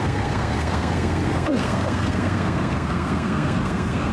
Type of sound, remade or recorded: remade